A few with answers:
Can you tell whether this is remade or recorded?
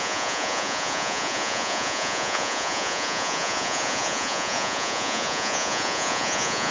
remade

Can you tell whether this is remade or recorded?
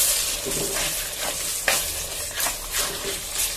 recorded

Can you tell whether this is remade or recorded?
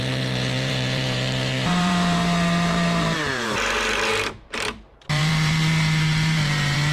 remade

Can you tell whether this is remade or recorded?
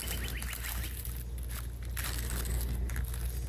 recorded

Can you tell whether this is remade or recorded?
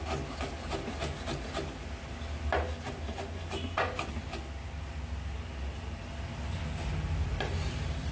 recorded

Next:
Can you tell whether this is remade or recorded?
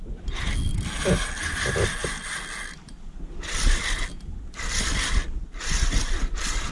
recorded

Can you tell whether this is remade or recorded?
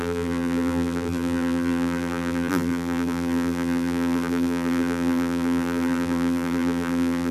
remade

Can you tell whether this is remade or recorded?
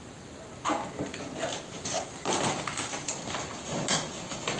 recorded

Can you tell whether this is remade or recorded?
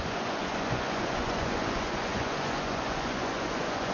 remade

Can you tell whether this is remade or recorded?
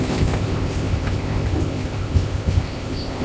remade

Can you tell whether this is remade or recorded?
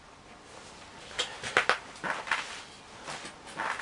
recorded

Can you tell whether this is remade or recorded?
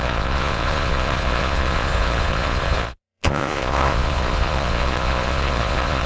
remade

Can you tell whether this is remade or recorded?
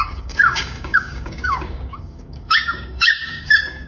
remade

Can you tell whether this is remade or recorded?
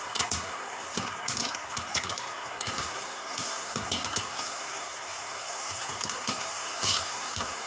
remade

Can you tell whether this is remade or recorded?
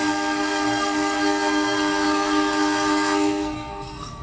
remade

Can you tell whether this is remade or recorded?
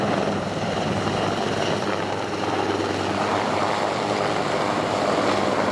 recorded